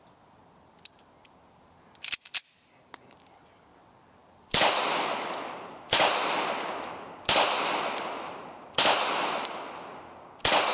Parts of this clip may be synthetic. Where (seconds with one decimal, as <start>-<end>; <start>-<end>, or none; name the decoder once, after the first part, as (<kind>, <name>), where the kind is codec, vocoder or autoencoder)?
4.2-6.7 (vocoder, BigVGAN v2)